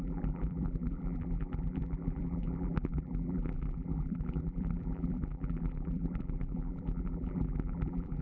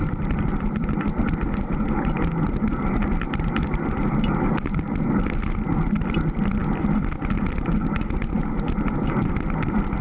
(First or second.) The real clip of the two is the second